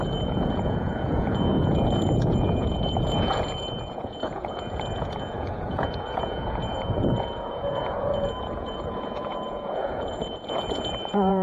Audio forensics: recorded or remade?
remade